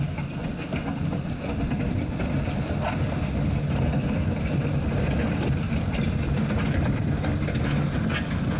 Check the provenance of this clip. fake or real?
real